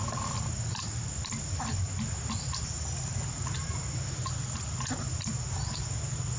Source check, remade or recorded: recorded